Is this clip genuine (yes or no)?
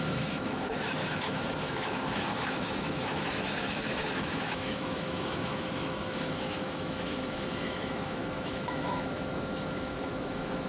no